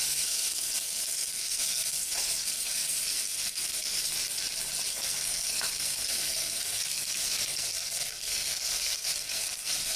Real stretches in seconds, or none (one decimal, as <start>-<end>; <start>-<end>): 4.1-4.9